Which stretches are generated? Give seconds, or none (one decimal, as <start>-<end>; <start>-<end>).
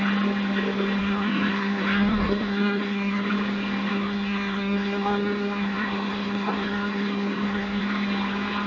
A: 1.0-3.3; 3.9-7.8